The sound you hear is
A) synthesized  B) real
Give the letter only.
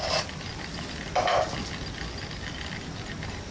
B